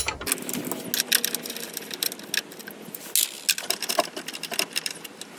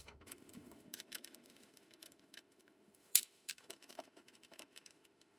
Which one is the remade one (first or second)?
second